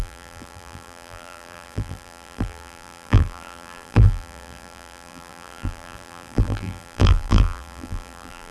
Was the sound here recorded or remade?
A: remade